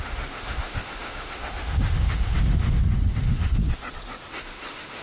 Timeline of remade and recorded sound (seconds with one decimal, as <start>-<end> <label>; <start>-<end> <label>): 0.0-3.6 remade; 3.6-4.3 recorded; 4.3-5.0 remade